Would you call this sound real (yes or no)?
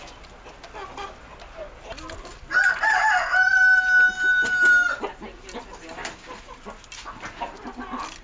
yes